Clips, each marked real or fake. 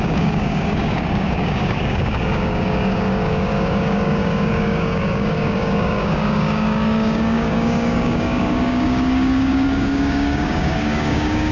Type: fake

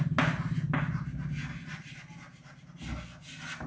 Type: real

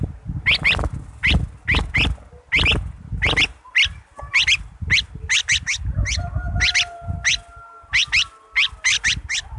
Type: real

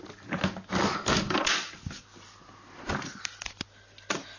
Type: real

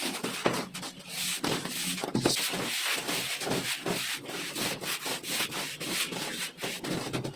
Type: real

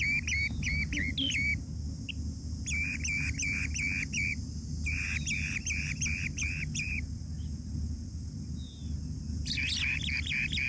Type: real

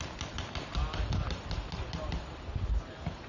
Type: real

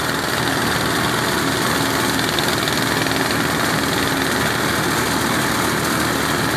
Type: real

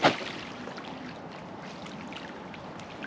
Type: real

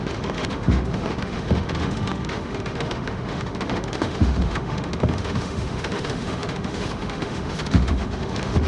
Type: fake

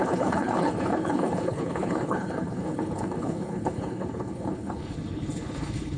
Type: fake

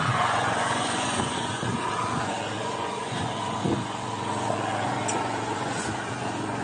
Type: fake